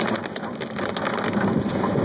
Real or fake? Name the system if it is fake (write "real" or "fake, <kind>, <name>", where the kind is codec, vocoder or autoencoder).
real